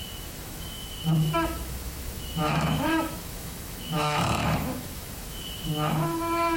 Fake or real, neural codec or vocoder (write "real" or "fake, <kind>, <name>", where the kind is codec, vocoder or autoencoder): fake, autoencoder, DAC-VAE